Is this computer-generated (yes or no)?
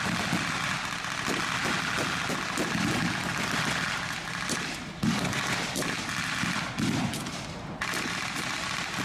no